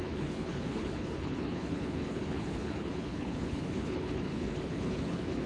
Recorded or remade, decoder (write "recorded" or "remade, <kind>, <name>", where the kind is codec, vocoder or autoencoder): remade, codec, HILCodec